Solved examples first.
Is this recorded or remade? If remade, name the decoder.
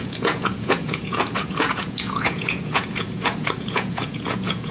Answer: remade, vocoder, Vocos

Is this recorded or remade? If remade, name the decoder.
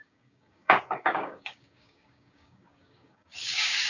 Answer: remade, codec, DAC